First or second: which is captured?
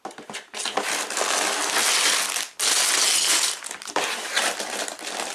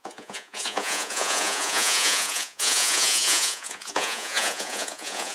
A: first